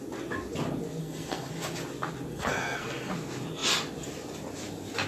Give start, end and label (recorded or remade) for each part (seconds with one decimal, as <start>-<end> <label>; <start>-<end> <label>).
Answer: 0.0-1.0 recorded; 1.0-1.5 remade; 1.5-2.3 recorded; 2.3-3.1 remade; 3.1-5.1 recorded

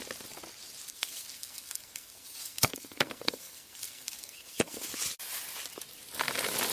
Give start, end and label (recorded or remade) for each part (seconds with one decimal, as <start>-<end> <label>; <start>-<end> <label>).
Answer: 0.0-0.9 recorded; 0.9-4.9 remade; 4.9-6.7 recorded

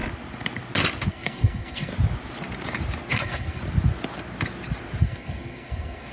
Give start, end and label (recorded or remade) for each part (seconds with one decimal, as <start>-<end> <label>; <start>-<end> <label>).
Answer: 0.0-1.1 recorded; 1.1-1.9 remade; 1.9-3.1 recorded; 3.1-3.6 remade; 3.6-5.0 recorded; 5.0-6.1 remade

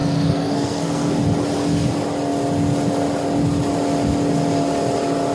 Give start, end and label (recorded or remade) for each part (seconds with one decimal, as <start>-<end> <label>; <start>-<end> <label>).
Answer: 0.0-1.2 remade; 1.2-5.3 recorded

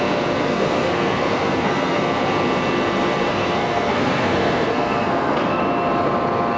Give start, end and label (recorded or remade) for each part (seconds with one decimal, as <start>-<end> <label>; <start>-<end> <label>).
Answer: 0.0-0.4 recorded; 0.4-2.0 remade; 2.0-3.3 recorded; 3.3-5.6 remade; 5.6-6.6 recorded

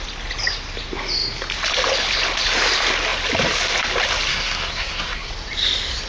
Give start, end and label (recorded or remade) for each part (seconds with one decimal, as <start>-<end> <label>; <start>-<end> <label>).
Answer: 0.0-4.3 recorded; 4.3-5.3 remade; 5.3-6.1 recorded

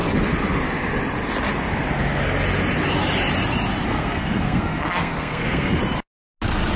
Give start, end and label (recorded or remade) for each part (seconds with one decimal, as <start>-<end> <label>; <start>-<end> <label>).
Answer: 0.0-3.9 recorded; 3.9-5.8 remade; 5.8-6.8 recorded

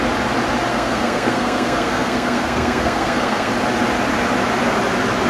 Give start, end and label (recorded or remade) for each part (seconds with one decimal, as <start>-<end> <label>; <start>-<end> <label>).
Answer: 0.0-0.7 recorded; 0.7-3.5 remade; 3.5-5.3 recorded